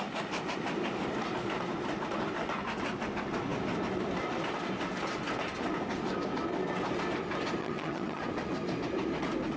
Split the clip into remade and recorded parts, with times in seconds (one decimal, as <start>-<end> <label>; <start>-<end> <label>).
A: 0.0-7.6 recorded; 7.6-8.2 remade; 8.2-9.6 recorded